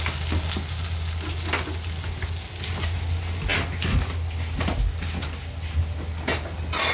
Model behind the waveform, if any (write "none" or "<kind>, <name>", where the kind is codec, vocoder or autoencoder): none